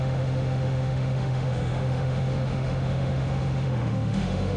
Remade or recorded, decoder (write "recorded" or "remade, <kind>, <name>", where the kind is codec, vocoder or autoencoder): remade, autoencoder, DAC-VAE